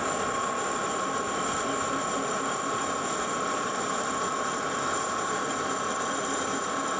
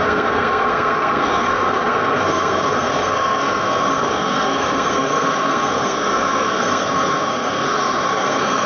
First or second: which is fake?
second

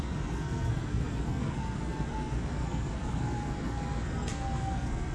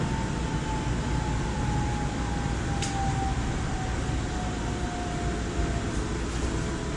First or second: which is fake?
first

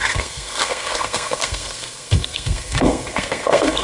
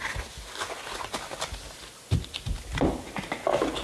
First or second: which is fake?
first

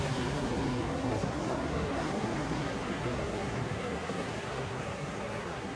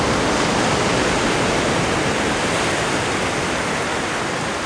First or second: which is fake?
first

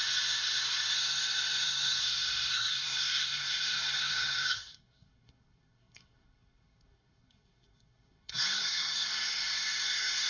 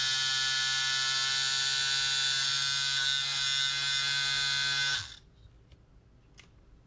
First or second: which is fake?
first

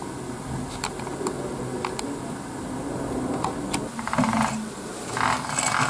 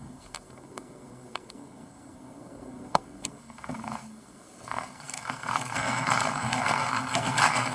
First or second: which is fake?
second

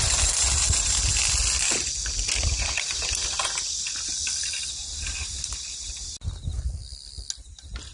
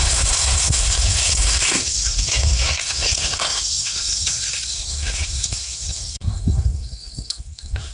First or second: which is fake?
second